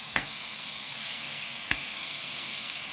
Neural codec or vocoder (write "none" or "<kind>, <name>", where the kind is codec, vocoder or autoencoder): codec, SNAC